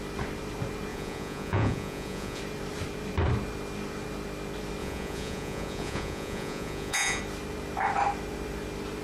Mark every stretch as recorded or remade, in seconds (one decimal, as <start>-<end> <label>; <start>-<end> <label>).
0.0-0.9 recorded; 0.9-2.4 remade; 2.4-4.8 recorded; 4.8-7.2 remade; 7.2-9.0 recorded